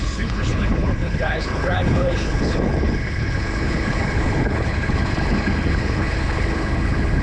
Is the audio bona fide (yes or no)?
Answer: no